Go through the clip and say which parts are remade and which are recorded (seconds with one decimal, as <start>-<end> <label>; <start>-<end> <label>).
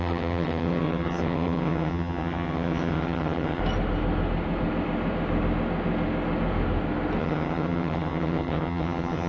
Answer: 0.0-3.6 remade; 3.6-7.2 recorded; 7.2-9.3 remade